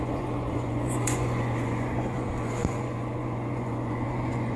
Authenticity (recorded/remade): remade